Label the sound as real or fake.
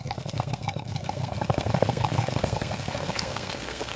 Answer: fake